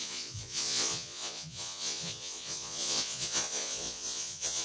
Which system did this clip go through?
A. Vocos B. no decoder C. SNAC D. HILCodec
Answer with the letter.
A